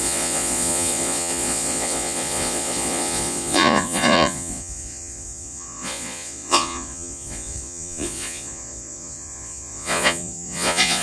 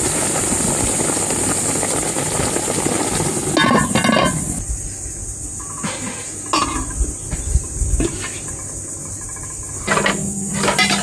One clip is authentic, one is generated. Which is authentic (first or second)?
second